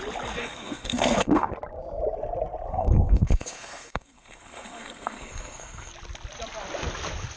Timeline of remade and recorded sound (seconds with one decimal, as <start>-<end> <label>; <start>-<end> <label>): 0.0-0.4 recorded; 0.4-1.5 remade; 1.5-2.7 recorded; 2.7-5.9 remade; 5.9-7.4 recorded